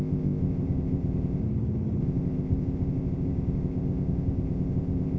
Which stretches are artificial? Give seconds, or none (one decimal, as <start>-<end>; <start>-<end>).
0.0-1.4; 2.0-5.2